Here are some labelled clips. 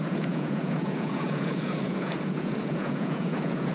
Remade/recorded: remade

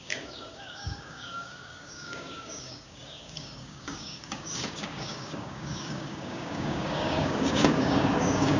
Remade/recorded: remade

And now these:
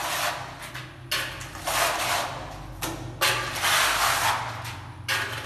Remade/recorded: recorded